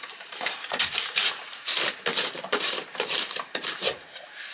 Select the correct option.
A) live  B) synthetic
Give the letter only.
B